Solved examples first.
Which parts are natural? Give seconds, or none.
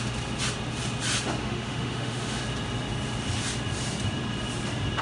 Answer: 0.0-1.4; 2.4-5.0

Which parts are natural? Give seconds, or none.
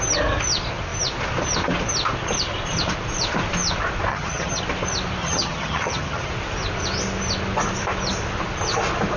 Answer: 0.0-4.1; 4.6-5.2; 6.3-9.2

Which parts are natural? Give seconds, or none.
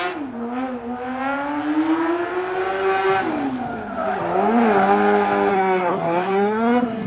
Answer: 0.0-5.5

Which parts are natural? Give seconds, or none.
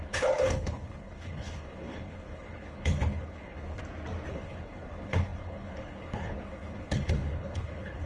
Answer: 3.8-4.3